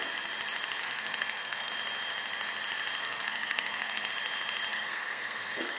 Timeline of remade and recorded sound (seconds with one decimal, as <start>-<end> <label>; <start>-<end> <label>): 0.0-0.8 recorded; 0.8-1.7 remade; 1.7-3.0 recorded; 3.0-4.1 remade; 4.1-4.7 recorded; 4.7-5.8 remade